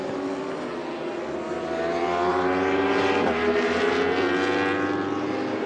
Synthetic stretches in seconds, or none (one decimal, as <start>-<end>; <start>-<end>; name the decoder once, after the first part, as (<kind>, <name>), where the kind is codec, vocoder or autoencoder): 2.3-3.8 (vocoder, BigVGAN v2)